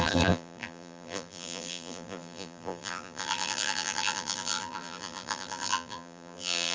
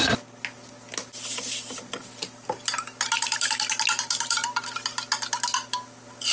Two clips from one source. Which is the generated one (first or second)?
first